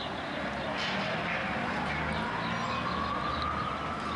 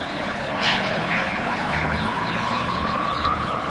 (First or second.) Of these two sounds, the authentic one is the first